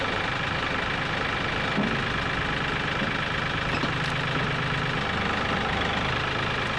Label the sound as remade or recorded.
recorded